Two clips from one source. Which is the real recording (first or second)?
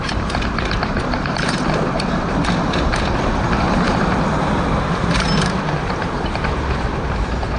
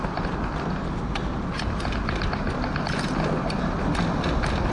second